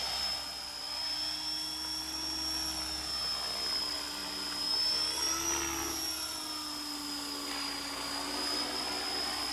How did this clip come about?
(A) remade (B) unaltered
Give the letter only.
B